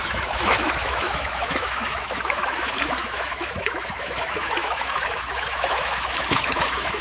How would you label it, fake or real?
fake